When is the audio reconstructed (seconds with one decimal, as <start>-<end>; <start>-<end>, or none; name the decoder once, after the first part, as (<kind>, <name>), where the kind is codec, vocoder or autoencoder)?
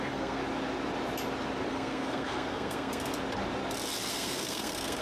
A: 0.0-0.4 (codec, SNAC); 1.7-3.1; 4.1-5.0